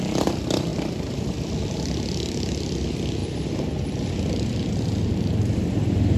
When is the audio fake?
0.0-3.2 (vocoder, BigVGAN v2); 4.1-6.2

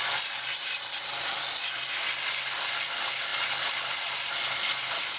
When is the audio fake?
0.0-3.3 (vocoder, BigVGAN v2); 4.3-5.2

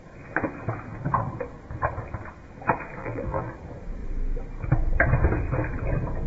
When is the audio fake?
3.0-3.5 (vocoder, BigVGAN v2)

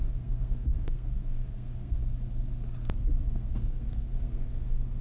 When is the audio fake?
0.0-2.0 (codec, SNAC); 3.2-5.0

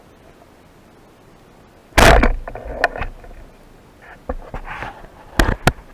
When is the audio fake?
none

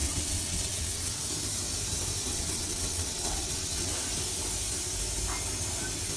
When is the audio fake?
0.0-1.2 (vocoder, WaveNeXt); 2.3-3.9

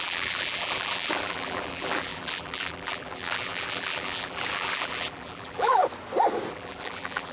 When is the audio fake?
0.0-5.8 (vocoder, BigVGAN v2); 6.5-7.3